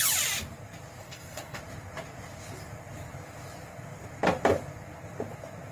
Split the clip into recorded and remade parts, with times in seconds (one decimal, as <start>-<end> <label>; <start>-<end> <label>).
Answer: 0.0-1.0 recorded; 1.0-1.6 remade; 1.6-5.7 recorded